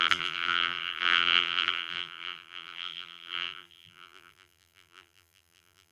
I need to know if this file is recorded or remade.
remade